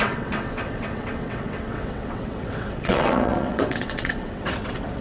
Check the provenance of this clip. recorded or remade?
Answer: remade